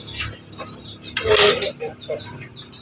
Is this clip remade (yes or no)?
no